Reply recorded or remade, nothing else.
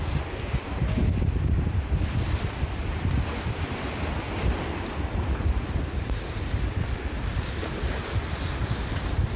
remade